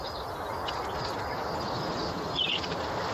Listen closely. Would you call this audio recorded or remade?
recorded